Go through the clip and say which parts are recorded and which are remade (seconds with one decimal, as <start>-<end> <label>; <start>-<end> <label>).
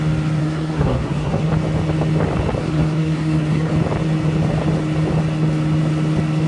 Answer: 0.0-0.4 recorded; 0.4-1.5 remade; 1.5-2.6 recorded; 2.6-3.7 remade; 3.7-6.5 recorded